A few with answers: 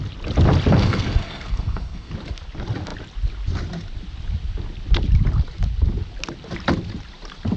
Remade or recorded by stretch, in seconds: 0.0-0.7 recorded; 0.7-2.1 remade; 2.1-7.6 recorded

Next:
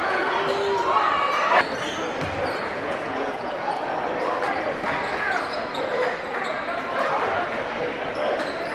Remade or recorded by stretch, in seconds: 0.0-2.6 recorded; 2.6-4.0 remade; 4.0-5.1 recorded; 5.1-6.8 remade; 6.8-8.7 recorded